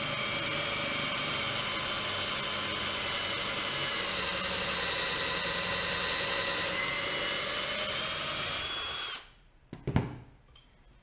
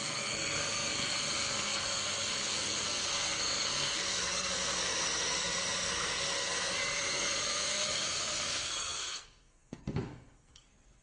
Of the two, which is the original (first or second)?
first